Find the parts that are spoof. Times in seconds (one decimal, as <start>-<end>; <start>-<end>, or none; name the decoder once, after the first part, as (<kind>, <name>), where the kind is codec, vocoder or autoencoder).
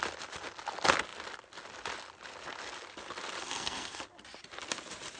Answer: 3.4-4.0 (codec, SNAC)